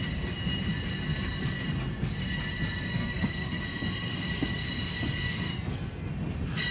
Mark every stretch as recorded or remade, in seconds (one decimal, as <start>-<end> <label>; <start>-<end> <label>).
0.0-2.9 recorded; 2.9-3.6 remade; 3.6-5.5 recorded; 5.5-6.1 remade; 6.1-6.7 recorded